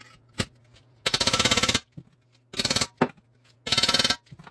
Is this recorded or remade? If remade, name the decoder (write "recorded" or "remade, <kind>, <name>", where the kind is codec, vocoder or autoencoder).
recorded